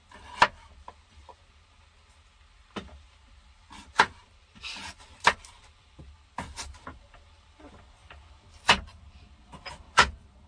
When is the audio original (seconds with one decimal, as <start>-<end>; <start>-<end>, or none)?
0.0-4.2; 6.0-8.0; 10.1-10.5